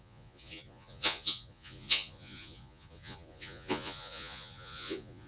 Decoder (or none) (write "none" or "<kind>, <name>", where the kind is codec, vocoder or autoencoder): vocoder, Vocos